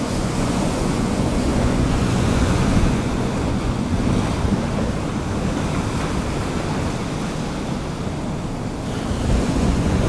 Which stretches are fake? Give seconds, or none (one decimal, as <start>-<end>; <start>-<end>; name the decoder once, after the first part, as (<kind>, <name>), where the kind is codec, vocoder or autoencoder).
0.0-4.0 (vocoder, Vocos); 9.3-10.1